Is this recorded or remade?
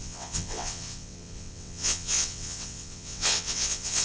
remade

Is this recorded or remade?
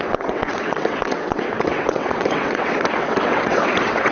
remade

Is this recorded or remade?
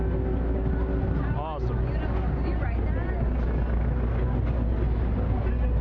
recorded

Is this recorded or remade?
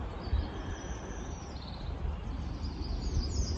recorded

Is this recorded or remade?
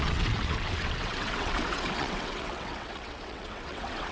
remade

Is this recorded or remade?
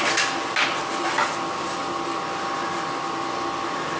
recorded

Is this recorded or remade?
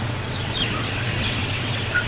remade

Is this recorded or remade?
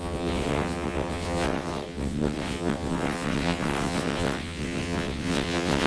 remade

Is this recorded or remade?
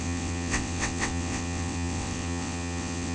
remade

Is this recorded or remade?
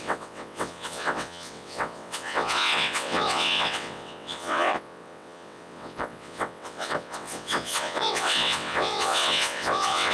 remade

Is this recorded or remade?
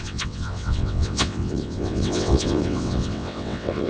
remade